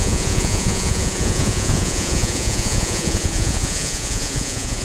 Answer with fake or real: fake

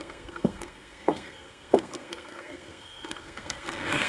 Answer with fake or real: fake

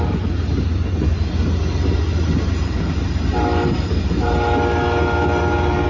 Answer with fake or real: real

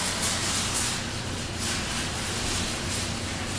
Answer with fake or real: real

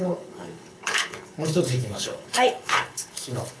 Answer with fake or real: fake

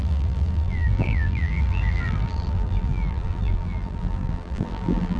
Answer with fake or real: fake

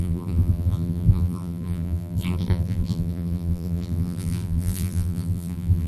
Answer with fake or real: fake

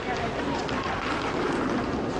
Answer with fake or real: real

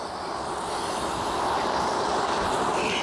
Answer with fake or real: real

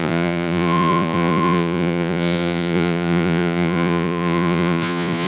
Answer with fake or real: fake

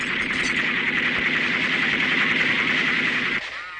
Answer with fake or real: real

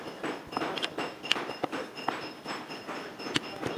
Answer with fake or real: real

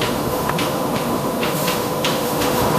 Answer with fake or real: fake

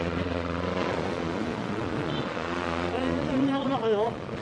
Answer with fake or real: fake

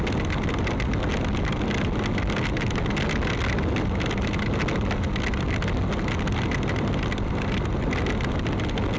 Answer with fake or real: real